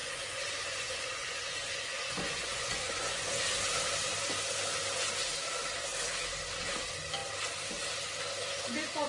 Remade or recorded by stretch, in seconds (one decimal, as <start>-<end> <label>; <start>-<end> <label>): 0.0-3.3 remade; 3.3-9.1 recorded